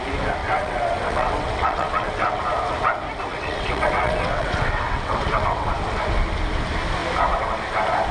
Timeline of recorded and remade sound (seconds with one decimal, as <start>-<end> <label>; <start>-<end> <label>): 0.0-0.4 recorded; 0.4-2.4 remade; 2.4-3.3 recorded; 3.3-5.7 remade; 5.7-8.1 recorded